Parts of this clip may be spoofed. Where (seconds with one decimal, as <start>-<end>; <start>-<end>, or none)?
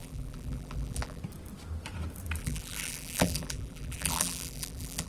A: 0.0-1.2; 2.4-5.1